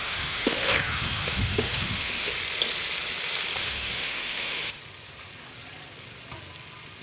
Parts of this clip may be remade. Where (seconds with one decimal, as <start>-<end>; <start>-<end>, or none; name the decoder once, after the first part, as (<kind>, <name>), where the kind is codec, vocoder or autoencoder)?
0.0-2.3 (autoencoder, DAC-VAE); 3.6-4.8

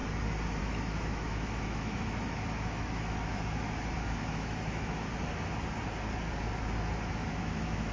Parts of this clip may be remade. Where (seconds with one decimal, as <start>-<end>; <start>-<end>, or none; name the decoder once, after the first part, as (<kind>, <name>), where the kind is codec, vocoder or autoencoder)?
0.6-5.1 (autoencoder, DAC-VAE); 7.4-7.9

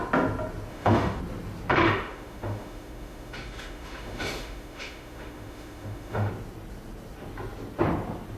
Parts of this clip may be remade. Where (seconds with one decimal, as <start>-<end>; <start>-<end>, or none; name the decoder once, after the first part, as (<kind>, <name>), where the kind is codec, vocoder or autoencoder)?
0.7-1.2 (autoencoder, DAC-VAE); 1.7-6.3

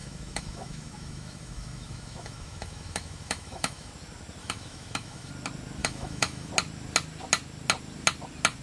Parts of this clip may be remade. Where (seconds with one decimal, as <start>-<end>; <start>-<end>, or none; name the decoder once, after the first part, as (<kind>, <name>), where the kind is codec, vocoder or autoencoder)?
0.0-3.9 (autoencoder, DAC-VAE); 4.4-5.3; 5.8-6.5